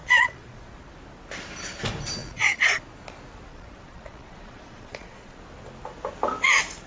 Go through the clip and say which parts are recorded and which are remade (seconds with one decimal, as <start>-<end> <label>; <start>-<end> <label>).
0.0-0.9 remade; 0.9-2.2 recorded; 2.2-2.8 remade; 2.8-3.5 recorded; 3.5-5.4 remade; 5.4-6.9 recorded